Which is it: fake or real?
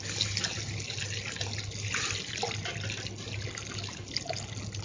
real